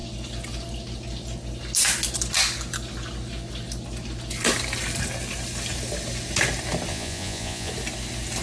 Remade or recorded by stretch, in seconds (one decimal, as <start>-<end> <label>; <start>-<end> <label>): 0.0-6.9 recorded; 6.9-7.7 remade; 7.7-8.4 recorded